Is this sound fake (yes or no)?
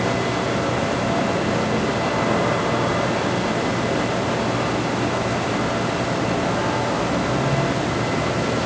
no